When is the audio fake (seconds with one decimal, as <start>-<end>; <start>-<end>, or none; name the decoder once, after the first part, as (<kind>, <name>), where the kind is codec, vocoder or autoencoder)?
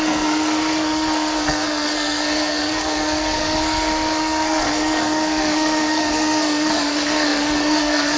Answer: 0.0-8.2 (codec, SNAC)